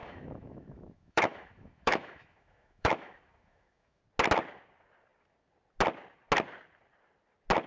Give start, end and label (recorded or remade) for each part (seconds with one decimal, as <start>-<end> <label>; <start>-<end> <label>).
0.0-4.0 remade; 4.0-7.7 recorded